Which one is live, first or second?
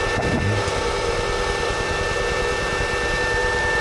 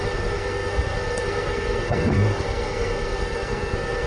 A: first